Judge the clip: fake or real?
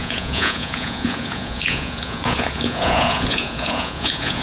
fake